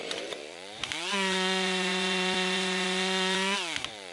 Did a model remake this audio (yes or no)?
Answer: yes